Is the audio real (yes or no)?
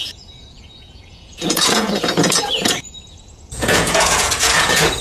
no